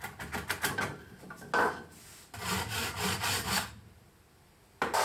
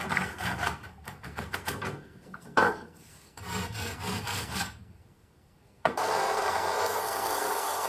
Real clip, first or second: first